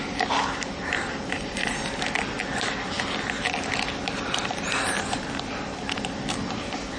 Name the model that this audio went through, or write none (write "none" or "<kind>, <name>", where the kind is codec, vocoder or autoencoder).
none